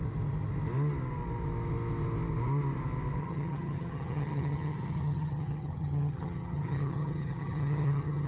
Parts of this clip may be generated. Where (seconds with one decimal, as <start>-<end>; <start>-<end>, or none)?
3.2-8.3